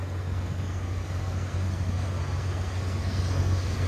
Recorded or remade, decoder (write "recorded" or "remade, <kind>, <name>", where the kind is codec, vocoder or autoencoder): remade, codec, SNAC